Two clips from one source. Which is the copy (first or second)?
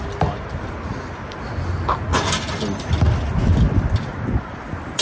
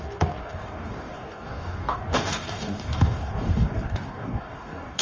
second